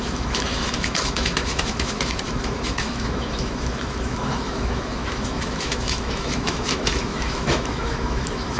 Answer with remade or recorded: remade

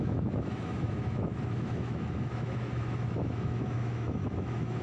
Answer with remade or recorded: remade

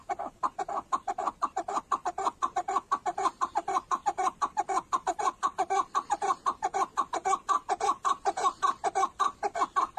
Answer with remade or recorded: recorded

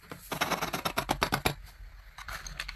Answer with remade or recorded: recorded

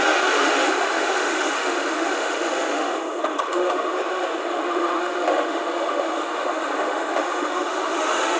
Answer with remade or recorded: remade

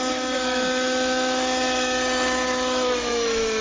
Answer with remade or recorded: remade